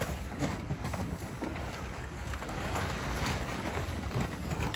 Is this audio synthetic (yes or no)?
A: yes